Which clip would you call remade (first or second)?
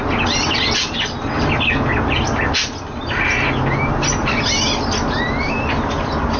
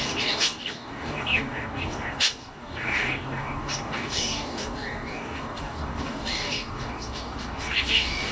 second